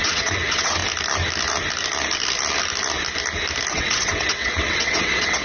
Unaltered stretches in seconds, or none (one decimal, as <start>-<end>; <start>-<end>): 0.8-3.7